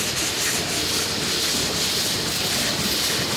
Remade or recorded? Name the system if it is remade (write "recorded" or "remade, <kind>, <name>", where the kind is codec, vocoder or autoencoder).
recorded